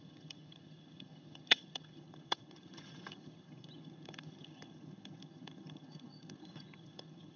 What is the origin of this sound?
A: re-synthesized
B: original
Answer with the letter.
A